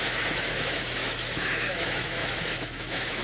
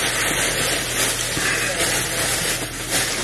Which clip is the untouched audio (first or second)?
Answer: second